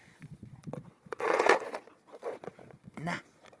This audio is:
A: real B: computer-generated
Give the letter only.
B